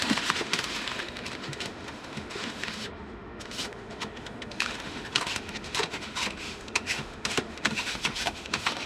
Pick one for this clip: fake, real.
fake